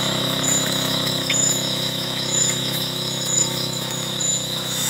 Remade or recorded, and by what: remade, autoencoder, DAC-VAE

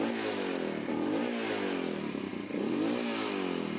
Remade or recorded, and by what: recorded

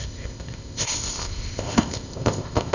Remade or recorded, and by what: remade, codec, ZipCodec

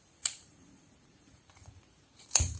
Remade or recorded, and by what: remade, vocoder, Vocos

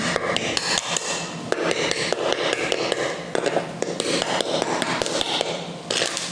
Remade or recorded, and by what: recorded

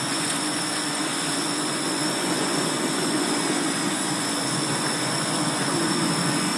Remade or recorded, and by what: remade, vocoder, Vocos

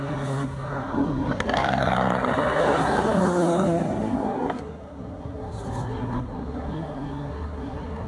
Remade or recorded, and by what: remade, codec, SNAC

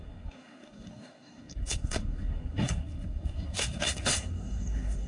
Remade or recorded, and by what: remade, codec, SNAC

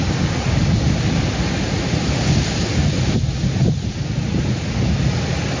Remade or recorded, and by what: recorded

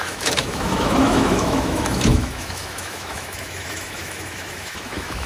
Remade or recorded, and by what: remade, autoencoder, DAC-VAE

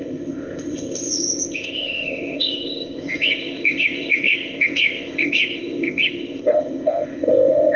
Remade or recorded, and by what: remade, codec, ZipCodec